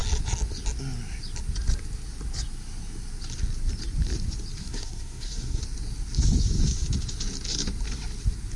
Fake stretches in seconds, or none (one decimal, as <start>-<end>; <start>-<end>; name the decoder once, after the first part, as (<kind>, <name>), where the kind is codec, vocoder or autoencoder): 4.6-5.6 (codec, SNAC)